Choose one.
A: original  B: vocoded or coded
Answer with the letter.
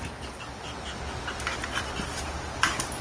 A